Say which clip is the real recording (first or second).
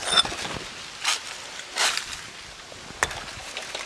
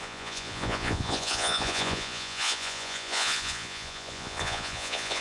first